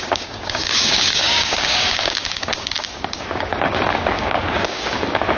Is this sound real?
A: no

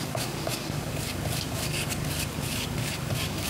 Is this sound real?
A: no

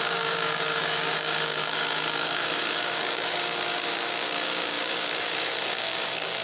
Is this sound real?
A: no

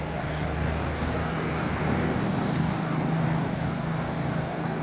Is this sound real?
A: no